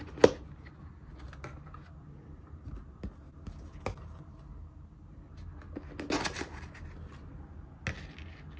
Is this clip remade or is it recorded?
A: recorded